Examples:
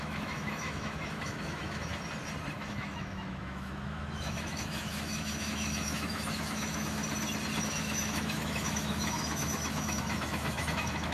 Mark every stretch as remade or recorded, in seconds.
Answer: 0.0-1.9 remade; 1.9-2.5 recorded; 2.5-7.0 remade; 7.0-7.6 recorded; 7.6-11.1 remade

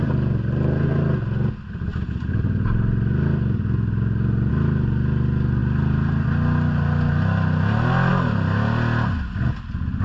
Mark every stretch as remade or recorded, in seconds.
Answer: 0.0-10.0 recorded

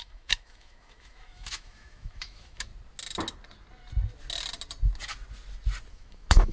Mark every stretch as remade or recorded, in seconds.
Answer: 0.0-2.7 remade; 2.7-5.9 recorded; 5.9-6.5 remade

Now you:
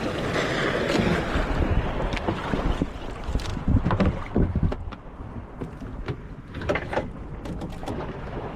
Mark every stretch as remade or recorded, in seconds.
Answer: 0.0-7.8 recorded; 7.8-8.6 remade

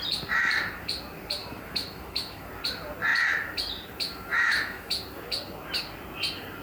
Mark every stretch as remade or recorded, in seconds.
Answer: 0.0-1.4 recorded; 1.4-2.5 remade; 2.5-4.3 recorded; 4.3-4.9 remade; 4.9-6.6 recorded

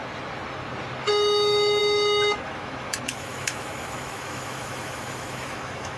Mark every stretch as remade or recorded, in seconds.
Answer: 0.0-1.1 recorded; 1.1-6.0 remade

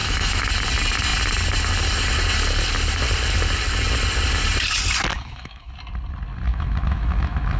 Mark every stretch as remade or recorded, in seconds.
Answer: 0.0-0.5 remade; 0.5-5.1 recorded; 5.1-5.7 remade; 5.7-6.5 recorded; 6.5-7.6 remade